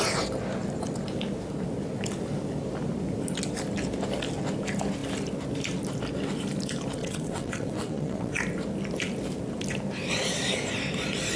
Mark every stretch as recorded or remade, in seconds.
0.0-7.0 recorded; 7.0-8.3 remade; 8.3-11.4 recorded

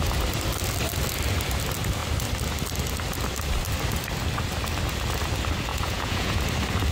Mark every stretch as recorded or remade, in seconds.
0.0-5.7 recorded; 5.7-6.4 remade; 6.4-6.9 recorded

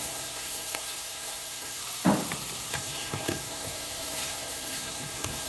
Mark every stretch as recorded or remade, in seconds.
0.0-1.8 remade; 1.8-2.7 recorded; 2.7-5.5 remade

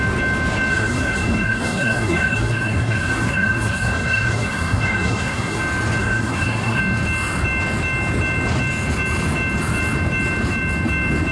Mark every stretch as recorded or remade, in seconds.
0.0-0.7 recorded; 0.7-5.6 remade; 5.6-6.0 recorded; 6.0-6.8 remade; 6.8-11.3 recorded